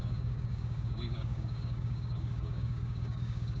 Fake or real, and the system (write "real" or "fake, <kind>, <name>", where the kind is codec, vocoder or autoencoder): fake, codec, DAC